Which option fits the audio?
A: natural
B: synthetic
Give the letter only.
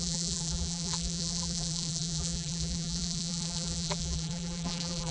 B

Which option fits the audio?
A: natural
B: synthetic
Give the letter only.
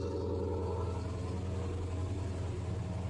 A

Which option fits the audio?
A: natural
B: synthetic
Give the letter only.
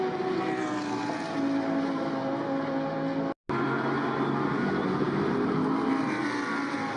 A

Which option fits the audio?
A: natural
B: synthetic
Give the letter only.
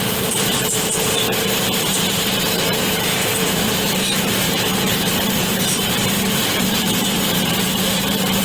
B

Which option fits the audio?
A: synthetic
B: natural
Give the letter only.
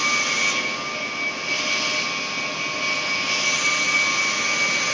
B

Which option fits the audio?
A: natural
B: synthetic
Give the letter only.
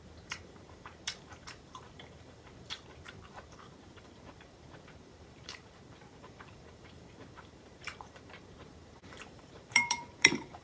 B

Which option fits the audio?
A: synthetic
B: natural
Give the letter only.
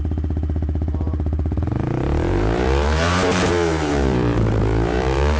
A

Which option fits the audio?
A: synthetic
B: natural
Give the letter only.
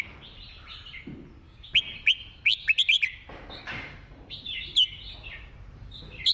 B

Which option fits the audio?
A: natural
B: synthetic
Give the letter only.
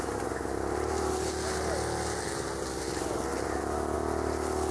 A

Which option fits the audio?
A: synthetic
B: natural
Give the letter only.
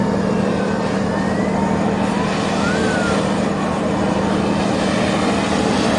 B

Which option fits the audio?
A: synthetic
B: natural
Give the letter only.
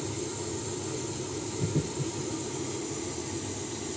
B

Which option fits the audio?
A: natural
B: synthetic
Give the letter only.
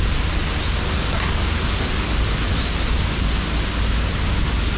A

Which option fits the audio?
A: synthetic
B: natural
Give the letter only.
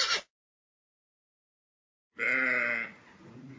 A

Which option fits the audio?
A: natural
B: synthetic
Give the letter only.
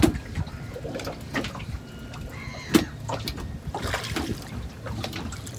B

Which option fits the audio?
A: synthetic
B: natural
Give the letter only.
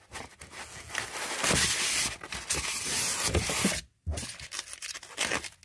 B